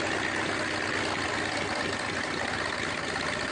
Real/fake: real